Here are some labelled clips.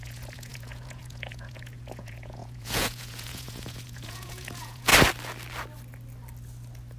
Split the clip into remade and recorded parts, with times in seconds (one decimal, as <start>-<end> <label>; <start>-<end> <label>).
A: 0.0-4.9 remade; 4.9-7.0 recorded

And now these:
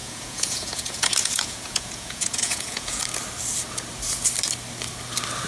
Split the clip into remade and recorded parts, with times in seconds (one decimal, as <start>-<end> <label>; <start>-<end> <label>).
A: 0.0-3.0 remade; 3.0-5.5 recorded

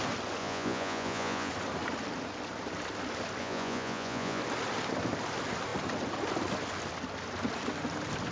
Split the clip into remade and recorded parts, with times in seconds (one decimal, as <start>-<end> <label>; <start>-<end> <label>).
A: 0.0-0.4 recorded; 0.4-1.5 remade; 1.5-3.4 recorded; 3.4-4.4 remade; 4.4-8.3 recorded

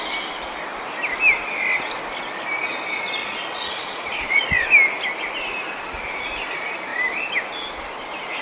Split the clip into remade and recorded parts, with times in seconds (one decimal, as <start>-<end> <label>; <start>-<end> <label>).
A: 0.0-3.2 recorded; 3.2-4.4 remade; 4.4-8.4 recorded